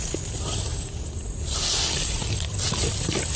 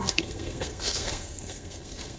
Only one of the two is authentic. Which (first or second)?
first